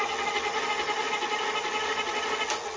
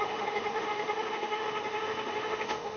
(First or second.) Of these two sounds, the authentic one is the first